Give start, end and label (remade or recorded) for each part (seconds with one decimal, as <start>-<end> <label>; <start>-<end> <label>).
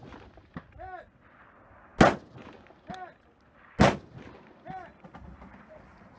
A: 0.0-6.2 recorded